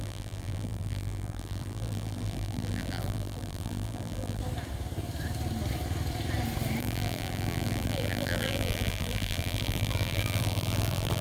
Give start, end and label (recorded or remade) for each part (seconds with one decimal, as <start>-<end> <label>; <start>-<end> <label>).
0.0-4.4 remade; 4.4-6.8 recorded; 6.8-11.2 remade